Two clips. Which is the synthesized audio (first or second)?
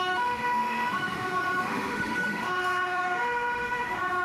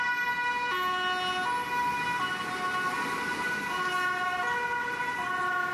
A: first